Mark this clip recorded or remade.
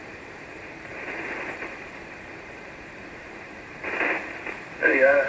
remade